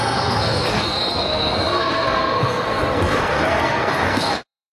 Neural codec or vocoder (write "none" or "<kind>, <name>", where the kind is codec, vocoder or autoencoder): codec, SNAC